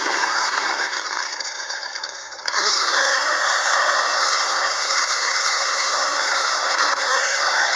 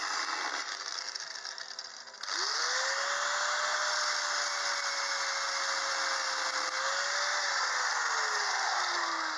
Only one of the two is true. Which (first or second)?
second